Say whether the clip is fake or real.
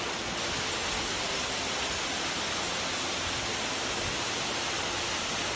real